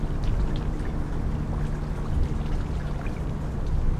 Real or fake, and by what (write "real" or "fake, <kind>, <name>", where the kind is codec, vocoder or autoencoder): real